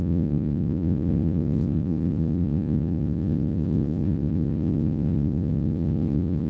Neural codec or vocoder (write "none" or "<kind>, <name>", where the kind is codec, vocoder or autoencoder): vocoder, Vocos